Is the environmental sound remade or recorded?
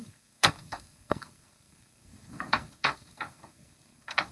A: remade